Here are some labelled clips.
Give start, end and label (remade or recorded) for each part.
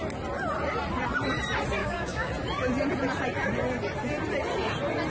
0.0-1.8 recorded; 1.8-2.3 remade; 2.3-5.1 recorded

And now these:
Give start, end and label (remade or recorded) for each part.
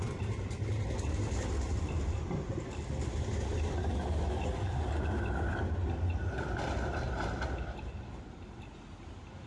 0.0-3.5 recorded; 3.5-4.2 remade; 4.2-9.5 recorded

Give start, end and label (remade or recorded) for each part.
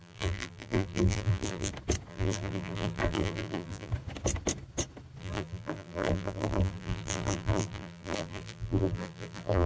0.0-1.7 remade; 1.7-2.1 recorded; 2.1-3.9 remade; 3.9-5.2 recorded; 5.2-9.7 remade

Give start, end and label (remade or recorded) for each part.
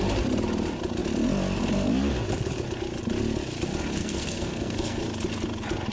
0.0-4.0 recorded; 4.0-5.0 remade; 5.0-5.9 recorded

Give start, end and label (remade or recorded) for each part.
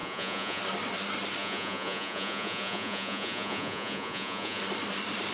0.0-0.6 remade; 0.6-1.4 recorded; 1.4-4.6 remade; 4.6-5.3 recorded